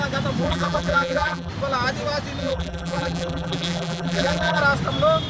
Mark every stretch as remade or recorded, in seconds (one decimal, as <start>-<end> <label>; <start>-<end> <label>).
0.0-0.4 recorded; 0.4-1.5 remade; 1.5-2.4 recorded; 2.4-4.6 remade; 4.6-5.3 recorded